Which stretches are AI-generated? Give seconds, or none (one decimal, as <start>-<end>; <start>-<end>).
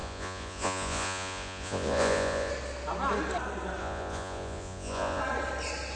0.0-2.5; 3.8-5.2